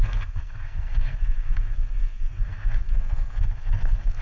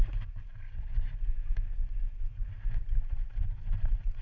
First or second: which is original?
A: second